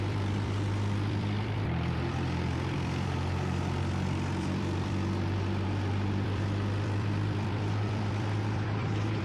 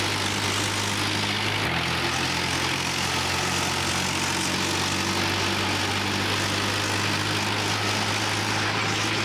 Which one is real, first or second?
second